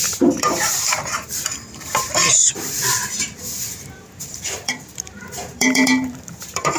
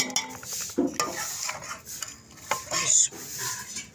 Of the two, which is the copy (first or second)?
first